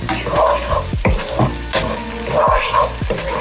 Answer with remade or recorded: recorded